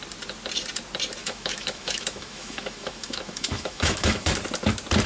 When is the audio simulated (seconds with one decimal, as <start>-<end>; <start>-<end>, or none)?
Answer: 1.2-4.3